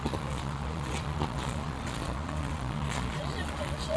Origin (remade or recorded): remade